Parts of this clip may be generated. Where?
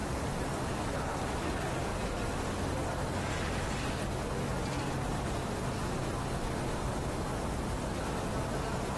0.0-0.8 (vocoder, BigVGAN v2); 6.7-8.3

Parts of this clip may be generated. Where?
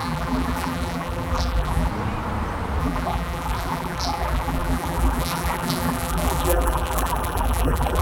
0.0-1.9 (vocoder, BigVGAN v2); 2.8-8.0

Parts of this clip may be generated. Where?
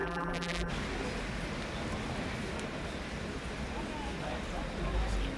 0.0-0.7 (vocoder, BigVGAN v2)